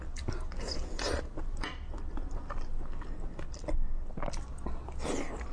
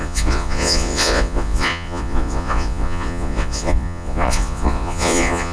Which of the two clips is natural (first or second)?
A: first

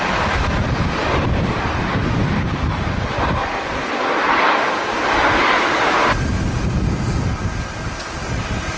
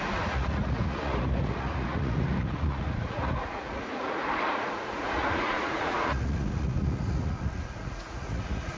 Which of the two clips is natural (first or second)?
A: first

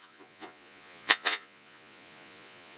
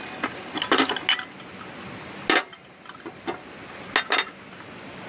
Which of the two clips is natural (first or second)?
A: second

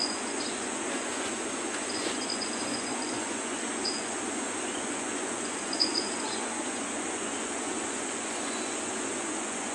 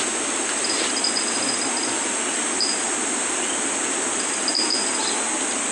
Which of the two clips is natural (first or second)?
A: second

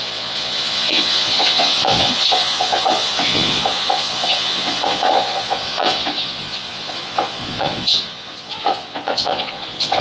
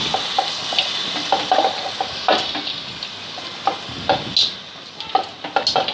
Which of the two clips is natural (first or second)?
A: second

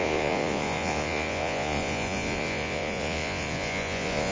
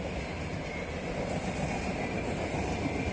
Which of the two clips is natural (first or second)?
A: second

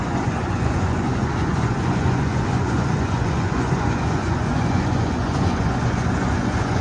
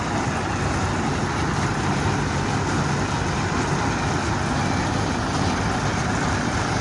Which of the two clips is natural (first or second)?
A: second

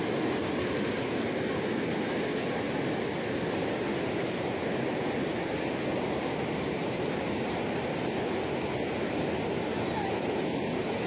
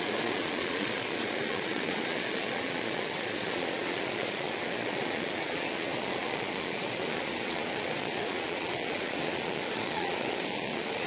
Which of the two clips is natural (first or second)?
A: first